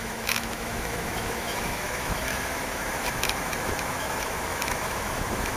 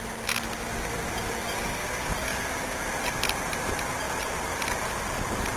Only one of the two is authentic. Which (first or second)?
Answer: second